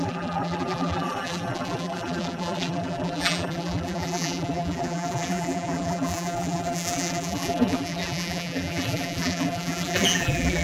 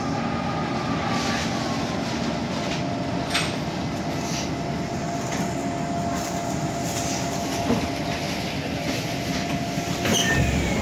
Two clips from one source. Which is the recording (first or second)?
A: second